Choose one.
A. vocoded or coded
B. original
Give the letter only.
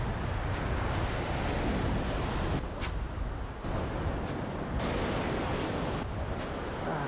B